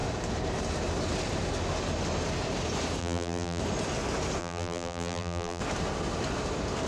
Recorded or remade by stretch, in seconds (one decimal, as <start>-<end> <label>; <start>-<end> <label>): 0.0-3.0 recorded; 3.0-3.6 remade; 3.6-4.4 recorded; 4.4-5.6 remade; 5.6-6.9 recorded